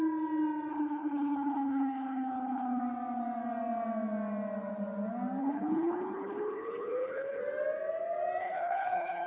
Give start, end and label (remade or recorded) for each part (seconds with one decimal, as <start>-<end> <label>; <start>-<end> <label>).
0.0-0.7 recorded; 0.7-2.8 remade; 2.8-5.4 recorded; 5.4-7.4 remade; 7.4-8.4 recorded; 8.4-9.3 remade